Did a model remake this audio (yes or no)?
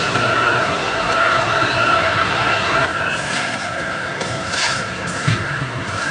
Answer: yes